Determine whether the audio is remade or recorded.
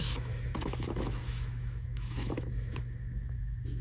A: remade